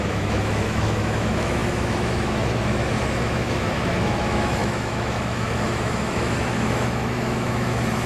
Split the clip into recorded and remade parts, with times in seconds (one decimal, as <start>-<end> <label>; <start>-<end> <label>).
0.0-8.1 remade